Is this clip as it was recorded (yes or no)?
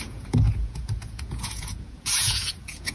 no